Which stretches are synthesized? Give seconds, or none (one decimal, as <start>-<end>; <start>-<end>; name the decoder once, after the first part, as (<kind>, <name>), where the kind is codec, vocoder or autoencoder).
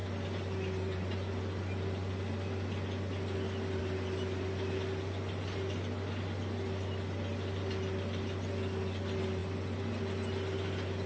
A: none